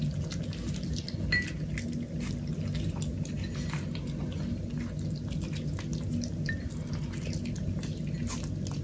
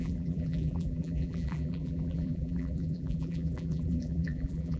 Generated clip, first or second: second